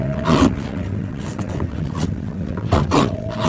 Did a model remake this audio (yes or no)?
yes